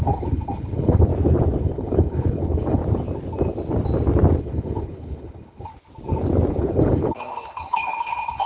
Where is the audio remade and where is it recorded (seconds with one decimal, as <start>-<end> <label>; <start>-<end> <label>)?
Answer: 0.0-1.1 remade; 1.1-1.6 recorded; 1.6-2.8 remade; 2.8-4.4 recorded; 4.4-5.7 remade; 5.7-6.5 recorded; 6.5-8.5 remade